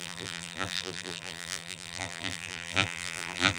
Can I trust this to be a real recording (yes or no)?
no